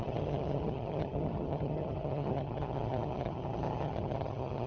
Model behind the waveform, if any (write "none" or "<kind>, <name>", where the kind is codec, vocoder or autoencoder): vocoder, HiFi-GAN